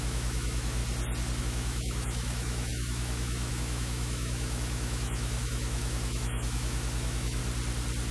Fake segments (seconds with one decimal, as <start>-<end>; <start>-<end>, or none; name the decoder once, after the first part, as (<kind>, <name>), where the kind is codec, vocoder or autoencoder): 0.0-0.8 (autoencoder, DAC-VAE); 1.4-7.4